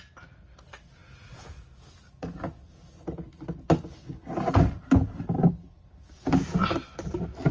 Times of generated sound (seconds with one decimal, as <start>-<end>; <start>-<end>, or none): 1.0-2.7